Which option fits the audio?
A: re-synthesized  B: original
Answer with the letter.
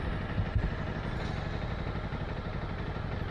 B